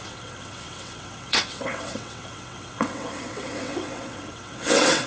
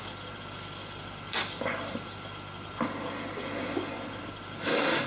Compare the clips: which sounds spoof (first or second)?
first